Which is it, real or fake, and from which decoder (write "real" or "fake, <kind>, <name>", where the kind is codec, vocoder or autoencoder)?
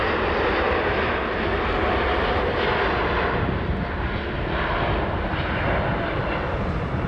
real